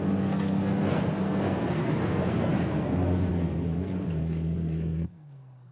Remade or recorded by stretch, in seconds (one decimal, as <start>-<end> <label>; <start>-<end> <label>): 0.0-5.7 remade